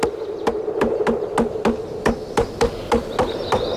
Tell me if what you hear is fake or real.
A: real